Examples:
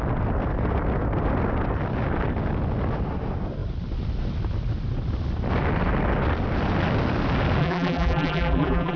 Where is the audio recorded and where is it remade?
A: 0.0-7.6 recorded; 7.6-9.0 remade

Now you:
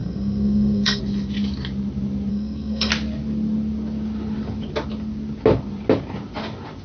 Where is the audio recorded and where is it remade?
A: 0.0-1.0 remade; 1.0-2.3 recorded; 2.3-2.9 remade; 2.9-6.8 recorded